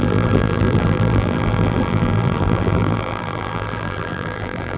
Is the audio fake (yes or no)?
yes